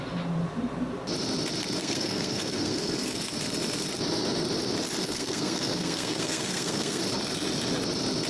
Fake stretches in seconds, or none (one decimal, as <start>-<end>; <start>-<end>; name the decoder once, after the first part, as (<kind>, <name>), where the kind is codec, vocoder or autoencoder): 1.8-3.2 (codec, SNAC); 5.0-7.0